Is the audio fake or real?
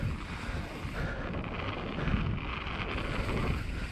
real